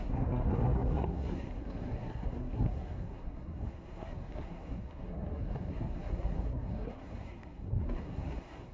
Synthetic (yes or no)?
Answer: yes